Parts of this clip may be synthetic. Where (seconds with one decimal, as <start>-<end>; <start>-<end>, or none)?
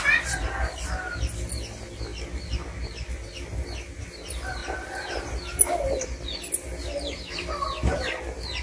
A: 4.6-5.4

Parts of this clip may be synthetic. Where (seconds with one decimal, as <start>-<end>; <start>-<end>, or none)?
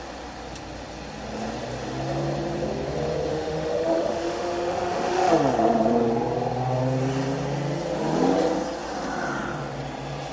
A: 3.3-5.3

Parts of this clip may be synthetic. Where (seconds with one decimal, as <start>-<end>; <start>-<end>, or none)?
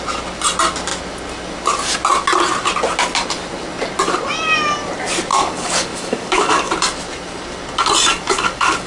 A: 5.3-6.7; 8.1-8.9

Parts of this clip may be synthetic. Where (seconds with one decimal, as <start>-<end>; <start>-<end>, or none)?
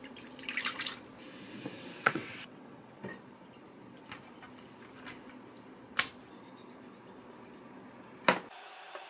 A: 1.7-3.0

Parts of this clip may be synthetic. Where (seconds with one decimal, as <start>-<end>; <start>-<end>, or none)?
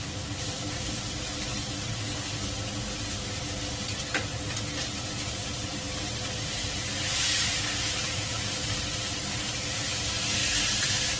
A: 0.0-1.5; 5.3-10.4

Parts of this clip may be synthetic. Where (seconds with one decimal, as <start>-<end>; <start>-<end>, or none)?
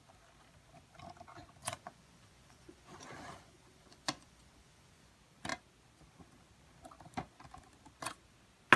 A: 1.6-5.1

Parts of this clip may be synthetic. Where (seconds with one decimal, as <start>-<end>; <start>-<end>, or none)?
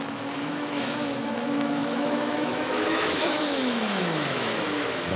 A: 0.0-5.2